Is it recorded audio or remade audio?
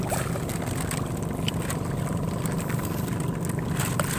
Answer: recorded